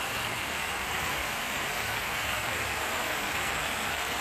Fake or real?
fake